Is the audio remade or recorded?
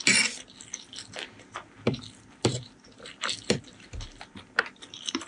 recorded